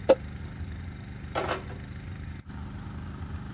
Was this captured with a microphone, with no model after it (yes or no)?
yes